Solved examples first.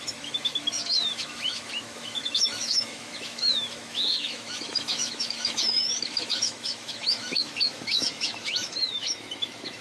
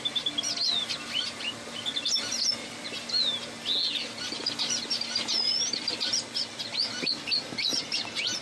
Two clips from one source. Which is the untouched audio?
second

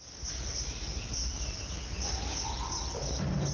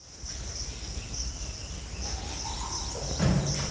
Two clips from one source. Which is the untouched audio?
first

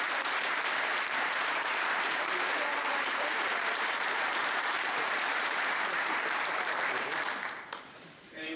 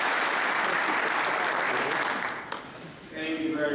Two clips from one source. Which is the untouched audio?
second